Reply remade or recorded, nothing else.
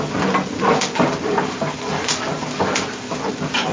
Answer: recorded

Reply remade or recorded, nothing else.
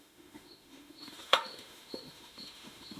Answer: remade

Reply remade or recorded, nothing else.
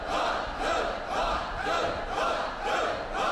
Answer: remade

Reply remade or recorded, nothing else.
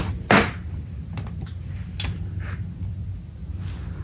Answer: recorded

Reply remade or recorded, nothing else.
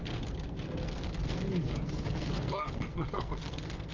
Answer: remade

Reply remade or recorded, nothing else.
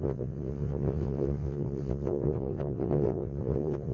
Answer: remade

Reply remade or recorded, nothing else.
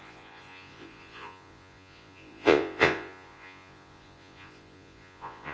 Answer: remade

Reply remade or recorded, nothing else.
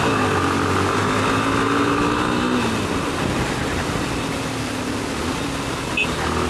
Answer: recorded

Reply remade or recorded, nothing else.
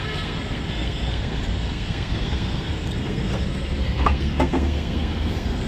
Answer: remade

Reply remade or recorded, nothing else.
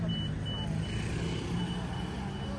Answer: recorded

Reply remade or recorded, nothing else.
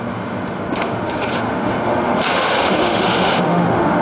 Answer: remade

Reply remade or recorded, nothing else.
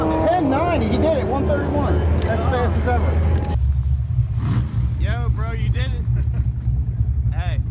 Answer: recorded